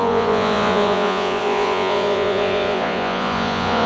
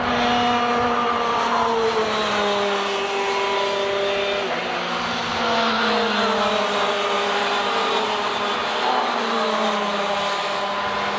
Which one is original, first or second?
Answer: second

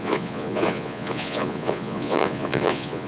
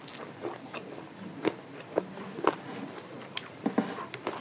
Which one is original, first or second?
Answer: second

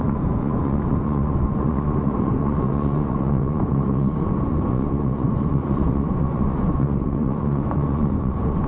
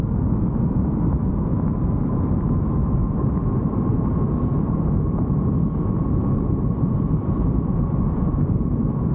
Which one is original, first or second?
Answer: second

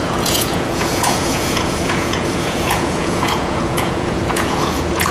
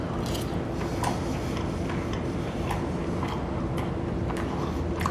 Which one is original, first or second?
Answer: second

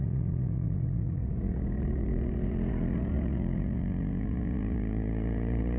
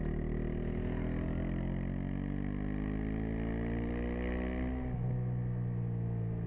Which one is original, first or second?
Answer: second